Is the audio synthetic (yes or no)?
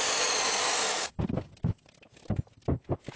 no